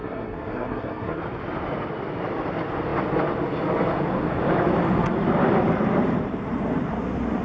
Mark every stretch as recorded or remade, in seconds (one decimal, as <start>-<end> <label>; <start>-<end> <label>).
0.0-1.2 remade; 1.2-7.4 recorded